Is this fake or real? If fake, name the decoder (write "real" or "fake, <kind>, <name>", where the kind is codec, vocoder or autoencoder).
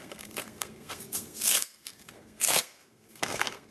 fake, codec, SNAC